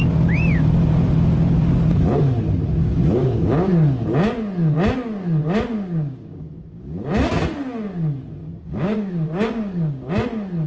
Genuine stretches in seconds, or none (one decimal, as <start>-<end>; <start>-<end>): 0.0-2.8; 3.7-5.7; 7.1-8.4; 10.1-10.7